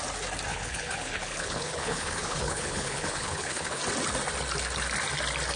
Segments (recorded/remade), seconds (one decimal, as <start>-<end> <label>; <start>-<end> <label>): 0.0-0.5 recorded; 0.5-3.8 remade; 3.8-5.6 recorded